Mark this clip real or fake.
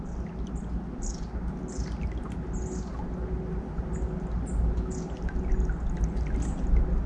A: real